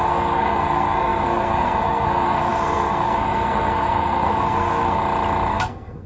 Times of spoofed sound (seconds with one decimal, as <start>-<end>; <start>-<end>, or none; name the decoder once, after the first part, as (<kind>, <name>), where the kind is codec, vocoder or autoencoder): 0.0-5.0 (codec, SNAC); 5.5-6.1